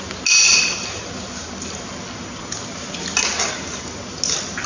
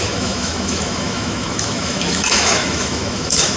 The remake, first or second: second